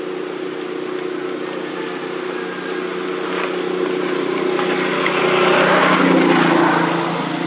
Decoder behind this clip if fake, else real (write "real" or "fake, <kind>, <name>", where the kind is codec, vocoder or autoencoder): real